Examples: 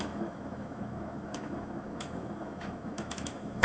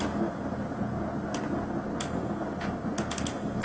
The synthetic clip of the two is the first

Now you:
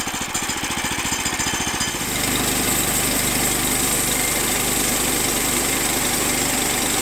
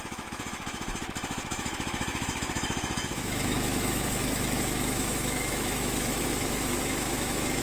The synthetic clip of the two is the second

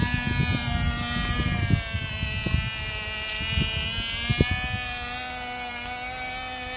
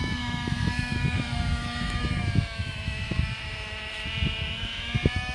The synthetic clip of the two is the second